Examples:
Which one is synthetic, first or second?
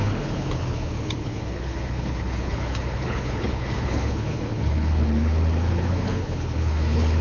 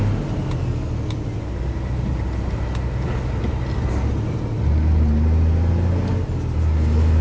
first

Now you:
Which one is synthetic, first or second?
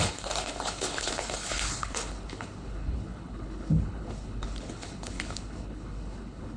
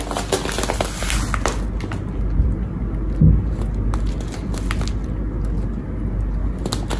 first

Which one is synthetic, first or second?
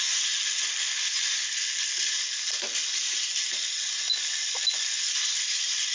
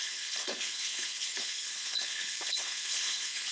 second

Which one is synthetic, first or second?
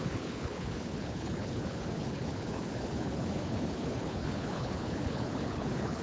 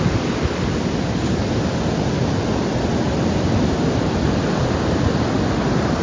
first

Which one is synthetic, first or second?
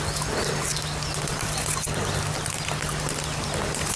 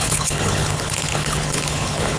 second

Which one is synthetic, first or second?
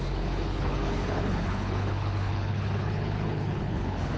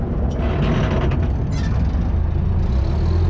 first